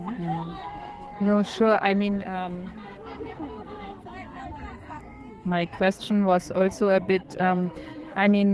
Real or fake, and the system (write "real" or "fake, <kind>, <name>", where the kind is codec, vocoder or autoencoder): fake, codec, SNAC